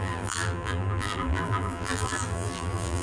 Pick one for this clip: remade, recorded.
remade